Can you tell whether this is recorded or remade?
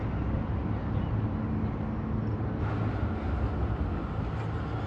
recorded